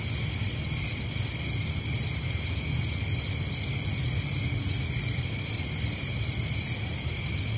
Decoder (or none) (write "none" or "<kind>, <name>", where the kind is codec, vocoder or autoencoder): none